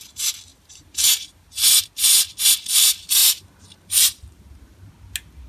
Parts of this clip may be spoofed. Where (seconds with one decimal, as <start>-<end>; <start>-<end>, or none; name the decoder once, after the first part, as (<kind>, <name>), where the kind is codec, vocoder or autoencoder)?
0.5-1.8 (vocoder, BigVGAN v2); 3.2-4.9